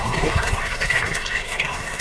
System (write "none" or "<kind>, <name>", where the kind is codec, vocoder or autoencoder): codec, SNAC